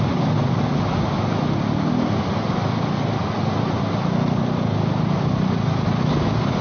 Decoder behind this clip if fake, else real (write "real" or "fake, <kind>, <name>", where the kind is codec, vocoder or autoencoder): real